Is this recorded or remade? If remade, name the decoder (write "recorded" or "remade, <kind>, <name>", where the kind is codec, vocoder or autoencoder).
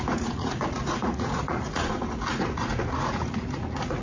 remade, vocoder, Vocos